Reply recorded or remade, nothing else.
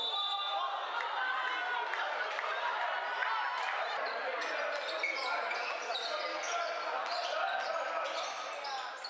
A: recorded